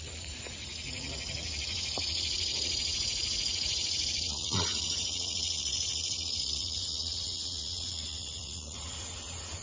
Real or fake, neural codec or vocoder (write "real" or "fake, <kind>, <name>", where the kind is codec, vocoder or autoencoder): fake, vocoder, Vocos